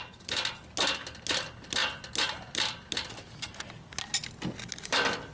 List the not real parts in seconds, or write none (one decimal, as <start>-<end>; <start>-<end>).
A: none